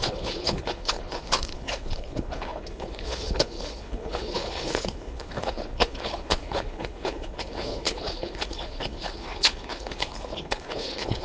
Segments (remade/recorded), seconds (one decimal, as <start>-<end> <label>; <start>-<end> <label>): 0.0-11.2 remade